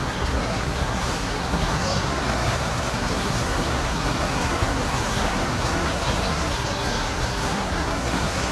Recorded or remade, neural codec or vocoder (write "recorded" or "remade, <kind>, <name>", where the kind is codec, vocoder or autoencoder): remade, codec, SNAC